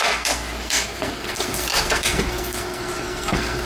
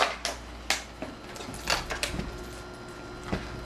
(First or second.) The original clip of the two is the second